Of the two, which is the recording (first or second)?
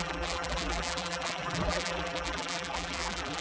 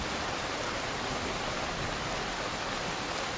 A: second